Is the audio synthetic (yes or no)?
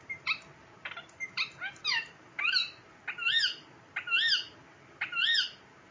no